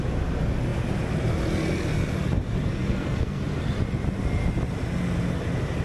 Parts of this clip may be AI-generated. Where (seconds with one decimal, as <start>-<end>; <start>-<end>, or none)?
2.7-3.4